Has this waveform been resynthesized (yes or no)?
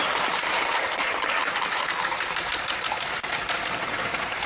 yes